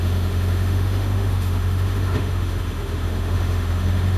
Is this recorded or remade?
remade